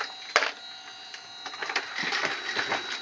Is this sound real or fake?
real